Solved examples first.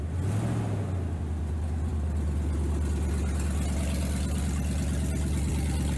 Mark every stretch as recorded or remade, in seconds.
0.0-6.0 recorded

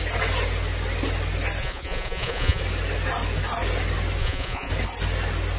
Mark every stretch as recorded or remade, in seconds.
0.0-1.6 recorded; 1.6-2.6 remade; 2.6-4.2 recorded; 4.2-4.7 remade; 4.7-5.6 recorded

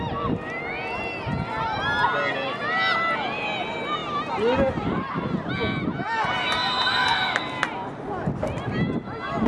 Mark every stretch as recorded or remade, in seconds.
0.0-9.5 recorded

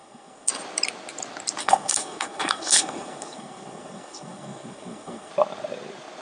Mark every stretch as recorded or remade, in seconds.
0.0-0.5 remade; 0.5-1.6 recorded; 1.6-5.3 remade; 5.3-6.2 recorded

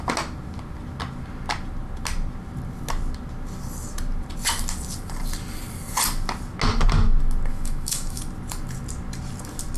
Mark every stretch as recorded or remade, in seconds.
0.0-7.5 recorded; 7.5-8.2 remade; 8.2-9.8 recorded

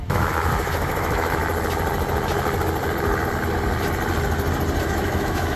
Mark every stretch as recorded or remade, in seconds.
0.0-1.4 remade; 1.4-4.8 recorded; 4.8-5.6 remade

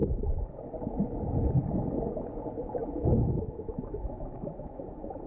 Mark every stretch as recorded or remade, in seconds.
0.0-2.8 recorded; 2.8-4.8 remade; 4.8-5.3 recorded